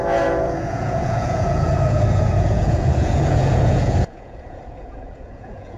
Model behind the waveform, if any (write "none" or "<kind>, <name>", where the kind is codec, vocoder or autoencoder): vocoder, Vocos